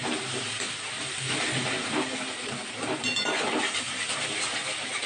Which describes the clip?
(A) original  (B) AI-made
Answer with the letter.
A